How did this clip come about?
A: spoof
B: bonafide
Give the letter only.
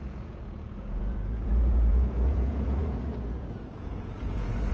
A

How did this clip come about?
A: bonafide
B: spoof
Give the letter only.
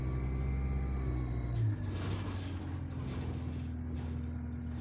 A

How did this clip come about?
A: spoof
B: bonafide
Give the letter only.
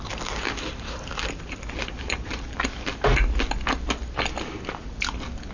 B